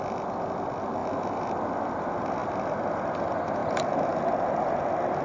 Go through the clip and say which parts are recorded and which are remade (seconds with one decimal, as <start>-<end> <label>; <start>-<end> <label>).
0.0-2.4 recorded; 2.4-3.2 remade; 3.2-3.6 recorded; 3.6-4.1 remade; 4.1-5.2 recorded

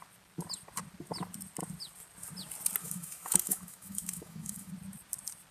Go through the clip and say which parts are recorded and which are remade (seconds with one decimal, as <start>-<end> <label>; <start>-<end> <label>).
0.0-2.8 recorded; 2.8-4.7 remade; 4.7-5.5 recorded

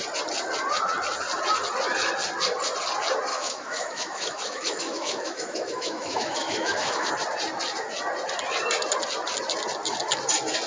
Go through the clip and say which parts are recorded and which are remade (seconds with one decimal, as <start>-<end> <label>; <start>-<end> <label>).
0.0-3.3 recorded; 3.3-7.1 remade; 7.1-10.7 recorded